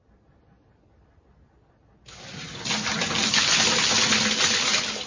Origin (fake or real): real